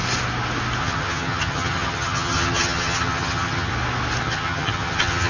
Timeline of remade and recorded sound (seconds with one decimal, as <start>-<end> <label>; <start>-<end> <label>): 0.0-0.8 recorded; 0.8-3.7 remade; 3.7-4.2 recorded; 4.2-5.3 remade